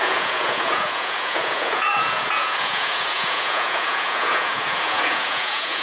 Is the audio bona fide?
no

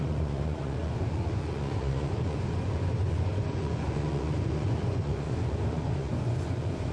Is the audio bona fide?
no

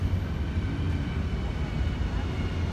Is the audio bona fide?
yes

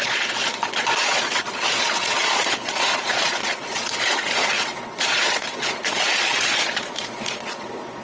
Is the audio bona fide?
no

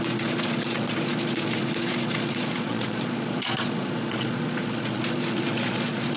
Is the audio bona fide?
no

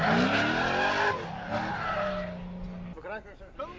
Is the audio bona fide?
yes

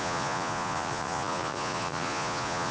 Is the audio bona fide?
no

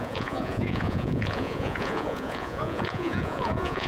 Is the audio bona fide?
no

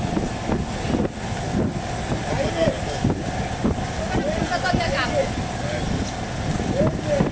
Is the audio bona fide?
yes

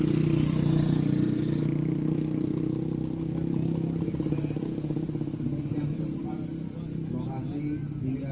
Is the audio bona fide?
yes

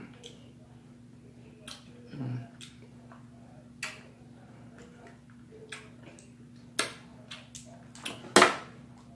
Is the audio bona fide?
yes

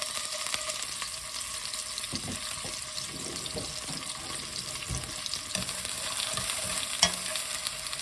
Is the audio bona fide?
yes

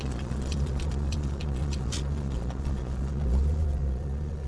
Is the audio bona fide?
no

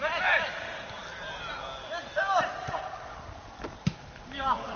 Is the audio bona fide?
yes